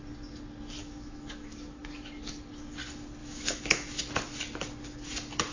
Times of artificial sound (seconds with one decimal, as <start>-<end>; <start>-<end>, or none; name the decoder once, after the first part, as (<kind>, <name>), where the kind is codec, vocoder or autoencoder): 0.8-1.9 (autoencoder, DAC-VAE); 3.2-4.0